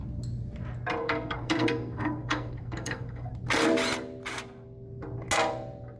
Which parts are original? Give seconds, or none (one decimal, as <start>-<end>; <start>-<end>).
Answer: 0.0-1.0; 3.3-6.0